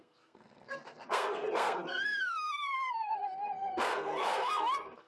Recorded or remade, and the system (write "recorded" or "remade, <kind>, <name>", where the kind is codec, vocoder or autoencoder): remade, codec, SNAC